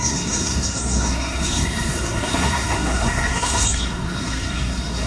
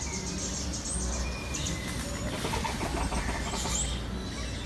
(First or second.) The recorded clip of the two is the second